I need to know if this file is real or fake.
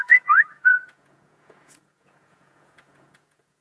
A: fake